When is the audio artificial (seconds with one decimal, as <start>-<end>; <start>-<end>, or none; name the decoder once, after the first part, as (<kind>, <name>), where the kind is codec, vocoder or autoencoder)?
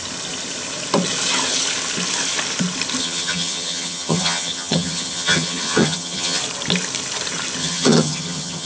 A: 3.0-6.4 (vocoder, HiFi-GAN); 7.6-8.7